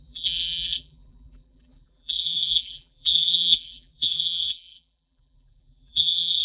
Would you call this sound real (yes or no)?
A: no